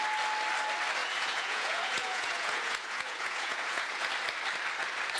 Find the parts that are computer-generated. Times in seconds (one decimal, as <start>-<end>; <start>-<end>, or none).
1.0-4.1